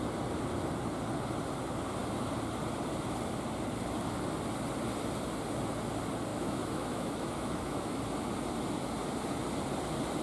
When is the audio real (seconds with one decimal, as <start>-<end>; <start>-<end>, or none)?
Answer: 0.0-6.3; 8.0-10.2